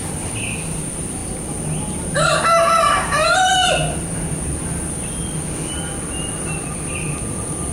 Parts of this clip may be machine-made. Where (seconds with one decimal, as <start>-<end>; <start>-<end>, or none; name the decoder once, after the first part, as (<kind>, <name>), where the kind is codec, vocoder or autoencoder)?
none